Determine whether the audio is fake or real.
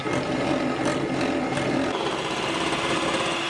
real